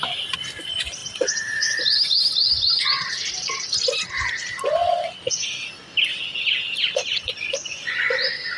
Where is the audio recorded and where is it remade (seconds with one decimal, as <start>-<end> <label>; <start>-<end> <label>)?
0.0-7.6 recorded; 7.6-8.1 remade; 8.1-8.6 recorded